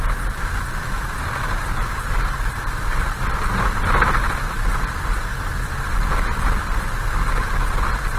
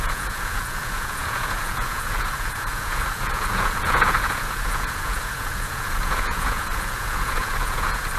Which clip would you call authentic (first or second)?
first